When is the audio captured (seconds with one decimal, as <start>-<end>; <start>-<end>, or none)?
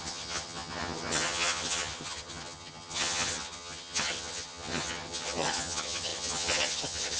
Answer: none